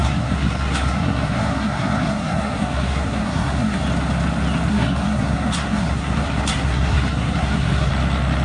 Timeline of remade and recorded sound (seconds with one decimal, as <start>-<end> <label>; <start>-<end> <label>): 0.0-3.8 remade; 3.8-4.7 recorded; 4.7-7.9 remade; 7.9-8.4 recorded